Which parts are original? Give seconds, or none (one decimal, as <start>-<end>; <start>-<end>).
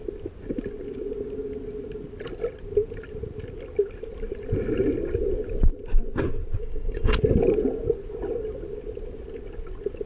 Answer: 0.0-6.6; 7.2-10.1